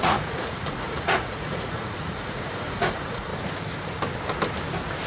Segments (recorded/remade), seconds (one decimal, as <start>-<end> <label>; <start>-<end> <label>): 0.0-3.3 remade; 3.3-5.1 recorded